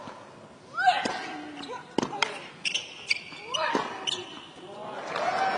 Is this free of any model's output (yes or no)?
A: yes